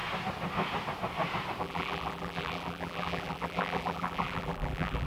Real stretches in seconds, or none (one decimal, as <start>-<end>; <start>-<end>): 0.0-1.6